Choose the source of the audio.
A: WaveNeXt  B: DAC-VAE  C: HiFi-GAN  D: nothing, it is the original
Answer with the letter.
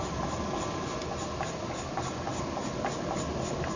D